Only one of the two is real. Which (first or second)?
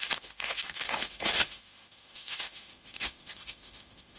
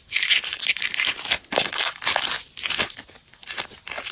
second